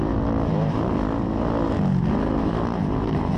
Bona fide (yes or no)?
yes